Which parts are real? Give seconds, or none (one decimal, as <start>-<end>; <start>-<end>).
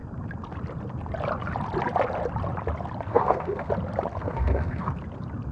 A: 0.0-3.1; 3.7-4.2; 4.9-5.5